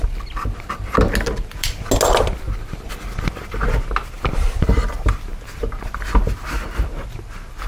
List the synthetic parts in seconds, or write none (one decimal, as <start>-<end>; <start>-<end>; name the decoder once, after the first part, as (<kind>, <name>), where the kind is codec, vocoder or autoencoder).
none